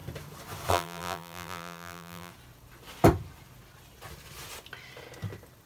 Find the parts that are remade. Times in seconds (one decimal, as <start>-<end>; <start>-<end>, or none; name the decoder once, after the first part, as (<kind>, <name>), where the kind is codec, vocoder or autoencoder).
0.7-2.3 (vocoder, BigVGAN v2)